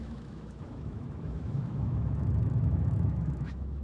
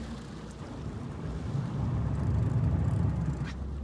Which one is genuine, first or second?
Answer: second